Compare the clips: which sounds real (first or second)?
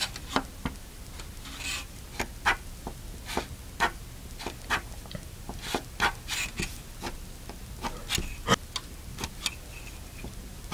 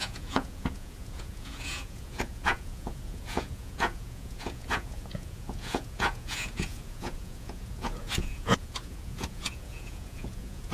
first